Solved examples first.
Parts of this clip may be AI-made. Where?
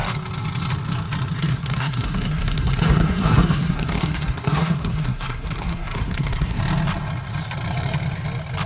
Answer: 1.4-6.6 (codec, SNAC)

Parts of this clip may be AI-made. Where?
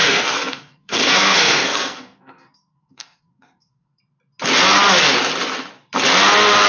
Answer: 0.0-4.0 (codec, SNAC)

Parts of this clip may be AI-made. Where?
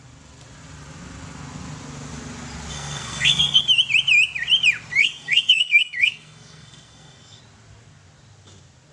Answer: 2.7-3.6 (codec, SNAC); 5.0-7.4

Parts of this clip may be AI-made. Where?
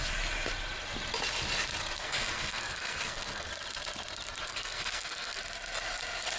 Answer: 2.0-3.5 (codec, SNAC); 4.5-5.4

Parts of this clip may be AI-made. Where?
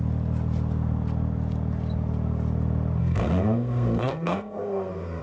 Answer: 3.0-5.2 (codec, SNAC)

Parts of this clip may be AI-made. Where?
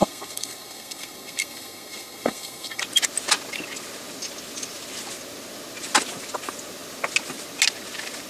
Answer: 0.0-2.8 (codec, SNAC)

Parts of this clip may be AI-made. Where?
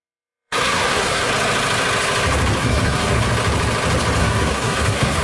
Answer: 0.0-1.3 (codec, SNAC); 2.6-3.3; 4.2-5.2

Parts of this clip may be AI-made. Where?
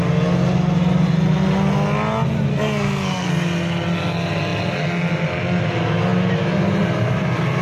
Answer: 2.5-3.3 (codec, SNAC)